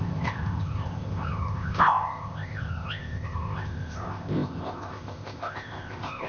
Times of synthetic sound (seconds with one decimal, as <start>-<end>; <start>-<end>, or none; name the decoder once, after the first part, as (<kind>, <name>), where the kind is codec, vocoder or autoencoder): 0.0-6.3 (codec, ZipCodec)